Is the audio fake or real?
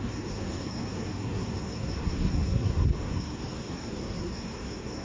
fake